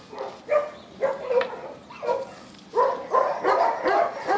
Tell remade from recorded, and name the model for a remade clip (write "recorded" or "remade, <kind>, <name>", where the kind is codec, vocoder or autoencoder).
recorded